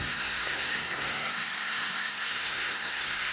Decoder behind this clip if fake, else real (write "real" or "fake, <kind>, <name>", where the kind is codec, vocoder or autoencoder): fake, codec, SNAC